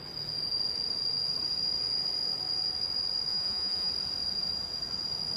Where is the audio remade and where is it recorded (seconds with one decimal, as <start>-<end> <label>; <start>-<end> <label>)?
0.0-3.3 recorded; 3.3-3.9 remade; 3.9-5.4 recorded